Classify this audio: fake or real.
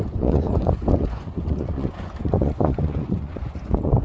fake